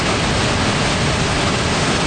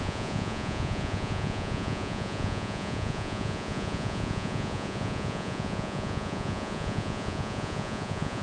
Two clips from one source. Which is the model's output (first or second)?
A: second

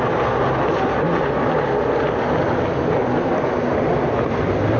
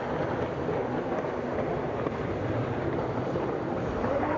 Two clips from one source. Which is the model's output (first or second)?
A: second